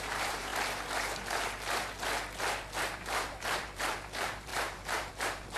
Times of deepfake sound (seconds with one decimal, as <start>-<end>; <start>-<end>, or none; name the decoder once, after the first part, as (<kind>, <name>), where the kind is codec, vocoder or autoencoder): 0.0-0.5 (vocoder, BigVGAN v2); 2.8-5.6

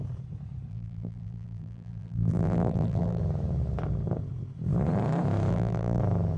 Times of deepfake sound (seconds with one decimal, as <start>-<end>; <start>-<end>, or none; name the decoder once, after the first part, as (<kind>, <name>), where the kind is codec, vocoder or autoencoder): 0.7-3.2 (vocoder, BigVGAN v2); 5.5-6.0

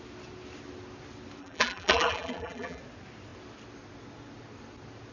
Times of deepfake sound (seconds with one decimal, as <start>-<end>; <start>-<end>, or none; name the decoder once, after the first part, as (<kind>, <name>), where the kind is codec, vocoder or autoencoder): 1.4-2.8 (vocoder, BigVGAN v2)

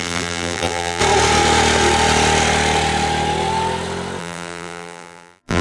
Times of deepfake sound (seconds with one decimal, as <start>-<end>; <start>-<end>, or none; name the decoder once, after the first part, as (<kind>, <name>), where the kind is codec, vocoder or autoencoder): 0.0-1.0 (vocoder, BigVGAN v2); 4.2-5.6

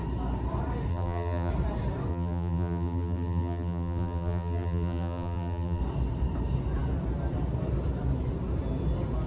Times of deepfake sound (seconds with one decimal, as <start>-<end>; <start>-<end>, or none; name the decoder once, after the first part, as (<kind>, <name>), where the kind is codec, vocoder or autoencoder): 0.9-1.5 (vocoder, BigVGAN v2); 2.1-5.8

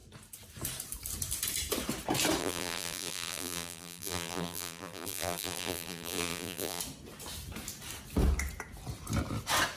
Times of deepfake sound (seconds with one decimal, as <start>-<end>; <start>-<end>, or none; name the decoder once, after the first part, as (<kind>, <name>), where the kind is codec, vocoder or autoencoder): 2.4-6.8 (vocoder, BigVGAN v2)

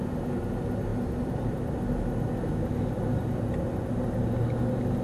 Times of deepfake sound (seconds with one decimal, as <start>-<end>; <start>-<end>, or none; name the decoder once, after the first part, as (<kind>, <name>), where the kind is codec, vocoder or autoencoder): 0.9-1.7 (vocoder, BigVGAN v2)